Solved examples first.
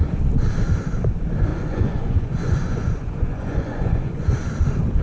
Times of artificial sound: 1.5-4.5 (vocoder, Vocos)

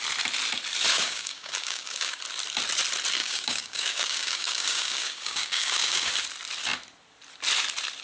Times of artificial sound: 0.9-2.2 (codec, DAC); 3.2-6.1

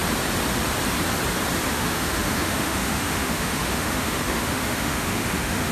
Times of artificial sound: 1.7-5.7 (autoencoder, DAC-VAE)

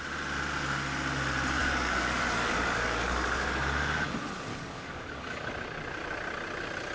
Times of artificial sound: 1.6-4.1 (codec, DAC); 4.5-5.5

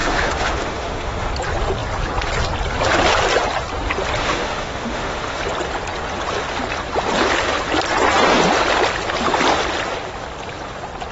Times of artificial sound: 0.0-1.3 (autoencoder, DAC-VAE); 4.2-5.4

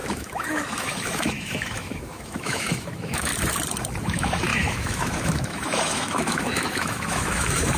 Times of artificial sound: 0.0-3.3 (autoencoder, DAC-VAE); 4.0-7.8